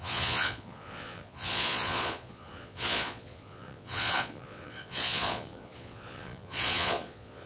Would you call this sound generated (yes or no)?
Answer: yes